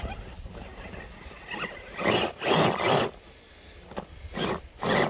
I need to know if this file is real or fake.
real